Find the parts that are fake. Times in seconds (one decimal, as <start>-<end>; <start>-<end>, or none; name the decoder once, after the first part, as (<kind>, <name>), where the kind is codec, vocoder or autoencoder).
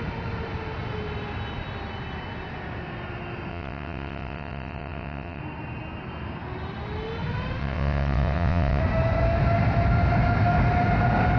3.5-5.4 (vocoder, WaveNeXt); 7.6-8.8